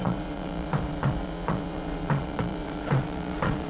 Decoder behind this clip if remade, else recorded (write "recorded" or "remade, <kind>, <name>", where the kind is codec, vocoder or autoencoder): remade, vocoder, Vocos